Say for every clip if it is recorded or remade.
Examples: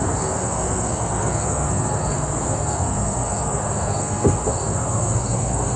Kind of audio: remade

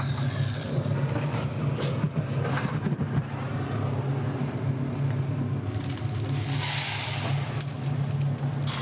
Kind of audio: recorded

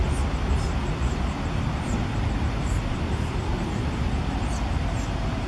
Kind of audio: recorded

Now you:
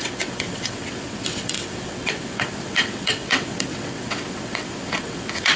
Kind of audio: remade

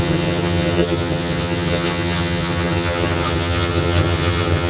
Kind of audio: remade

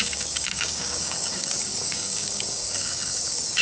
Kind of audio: remade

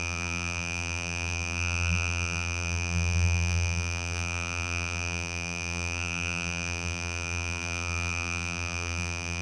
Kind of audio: remade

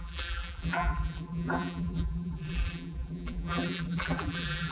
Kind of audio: remade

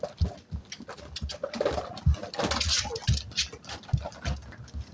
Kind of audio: recorded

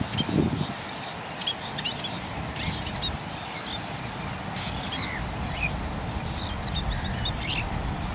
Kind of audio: recorded